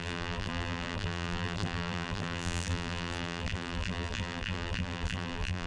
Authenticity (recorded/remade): remade